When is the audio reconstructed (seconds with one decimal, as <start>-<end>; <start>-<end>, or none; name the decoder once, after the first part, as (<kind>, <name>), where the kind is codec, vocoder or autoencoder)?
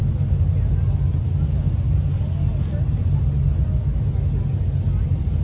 none